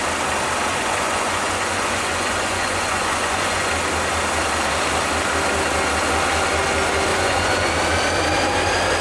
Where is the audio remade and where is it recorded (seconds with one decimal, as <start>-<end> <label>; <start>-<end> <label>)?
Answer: 0.0-0.7 recorded; 0.7-3.7 remade; 3.7-7.1 recorded; 7.1-7.7 remade; 7.7-9.0 recorded